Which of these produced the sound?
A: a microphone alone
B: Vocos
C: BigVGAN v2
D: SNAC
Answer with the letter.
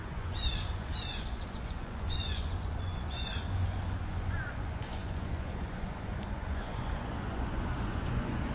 B